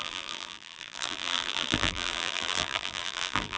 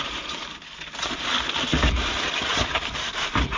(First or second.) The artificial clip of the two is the first